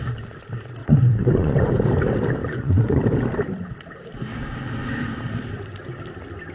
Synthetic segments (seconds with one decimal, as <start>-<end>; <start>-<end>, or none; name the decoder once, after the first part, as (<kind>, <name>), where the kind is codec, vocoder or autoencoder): 0.8-1.7 (vocoder, Vocos); 2.4-3.0